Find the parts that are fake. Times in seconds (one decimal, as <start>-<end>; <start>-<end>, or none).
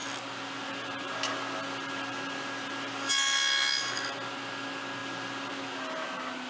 none